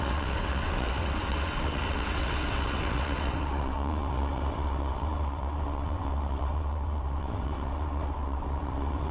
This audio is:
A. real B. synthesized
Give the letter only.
B